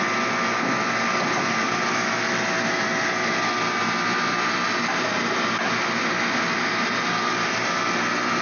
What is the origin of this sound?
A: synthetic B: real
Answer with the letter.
B